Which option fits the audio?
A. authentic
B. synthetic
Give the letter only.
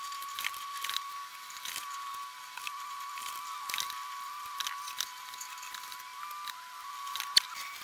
A